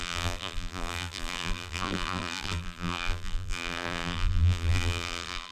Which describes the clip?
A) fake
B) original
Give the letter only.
A